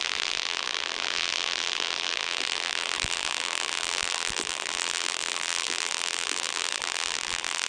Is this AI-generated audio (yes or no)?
yes